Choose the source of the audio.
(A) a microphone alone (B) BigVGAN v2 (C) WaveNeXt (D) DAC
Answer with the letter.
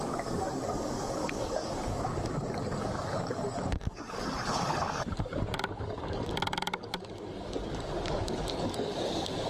D